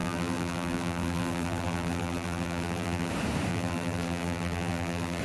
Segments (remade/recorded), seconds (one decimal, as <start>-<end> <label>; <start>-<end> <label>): 0.0-3.1 remade; 3.1-3.5 recorded; 3.5-5.2 remade